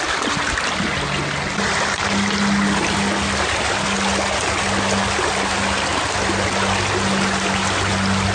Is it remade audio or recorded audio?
recorded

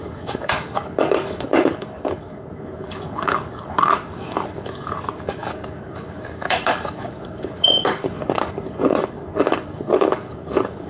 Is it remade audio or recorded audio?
remade